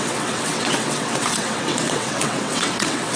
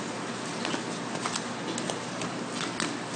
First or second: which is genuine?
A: second